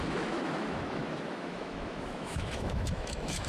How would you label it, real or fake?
fake